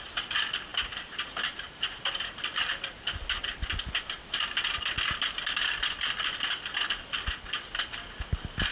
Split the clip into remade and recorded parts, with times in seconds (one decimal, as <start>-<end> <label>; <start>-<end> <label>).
0.0-0.7 recorded; 0.7-2.4 remade; 2.4-8.7 recorded